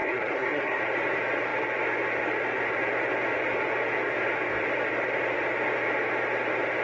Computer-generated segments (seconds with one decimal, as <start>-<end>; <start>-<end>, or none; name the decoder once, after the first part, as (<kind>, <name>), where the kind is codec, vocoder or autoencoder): 0.0-0.8 (codec, SNAC)